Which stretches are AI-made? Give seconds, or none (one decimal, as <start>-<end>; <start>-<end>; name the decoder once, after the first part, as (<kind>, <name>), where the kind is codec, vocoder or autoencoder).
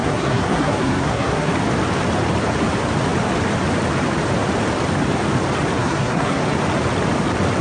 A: 0.0-1.5 (codec, SNAC); 5.8-6.4